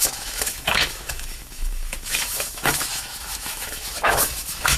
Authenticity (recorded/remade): remade